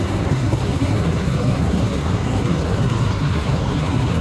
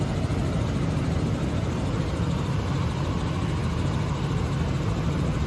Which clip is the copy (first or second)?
first